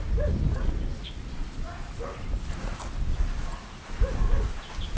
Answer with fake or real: real